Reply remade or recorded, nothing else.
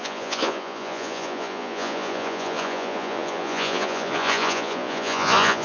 remade